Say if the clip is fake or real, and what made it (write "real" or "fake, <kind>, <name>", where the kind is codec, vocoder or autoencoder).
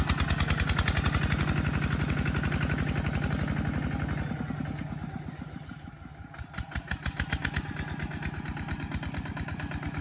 real